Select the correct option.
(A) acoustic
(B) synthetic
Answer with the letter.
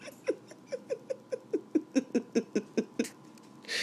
A